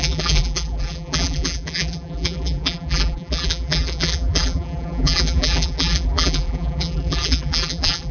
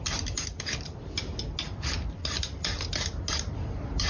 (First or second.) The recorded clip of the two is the second